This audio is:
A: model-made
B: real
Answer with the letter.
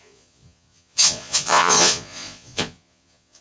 A